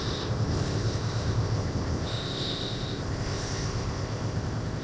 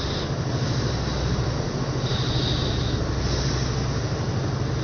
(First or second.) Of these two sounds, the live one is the second